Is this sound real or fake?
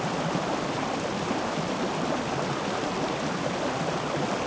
real